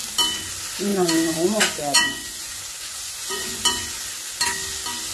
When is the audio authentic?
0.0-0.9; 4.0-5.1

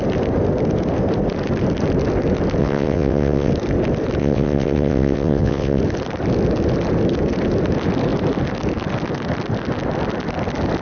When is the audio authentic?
0.0-2.6; 3.5-4.2; 5.8-10.8

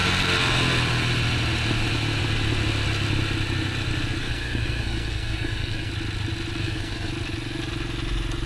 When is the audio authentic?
0.0-4.2; 5.9-6.6; 7.1-8.5

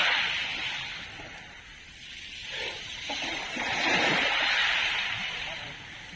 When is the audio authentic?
0.0-2.4; 5.7-6.2

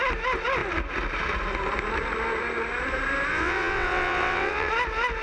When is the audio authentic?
0.0-3.3; 4.7-5.2

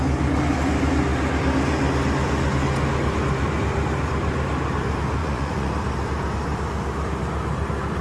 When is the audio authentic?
0.0-5.2; 5.7-8.0

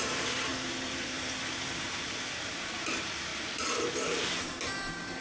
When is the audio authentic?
3.3-4.1

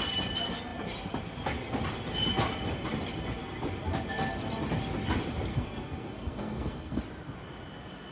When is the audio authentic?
0.0-5.5; 7.0-8.1